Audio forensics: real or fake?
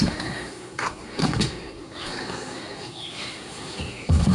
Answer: fake